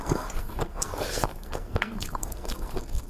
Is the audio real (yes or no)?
no